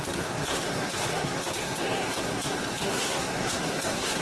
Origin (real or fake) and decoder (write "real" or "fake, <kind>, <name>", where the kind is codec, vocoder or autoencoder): fake, codec, SNAC